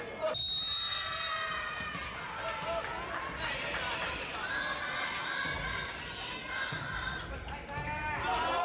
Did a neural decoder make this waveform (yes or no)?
no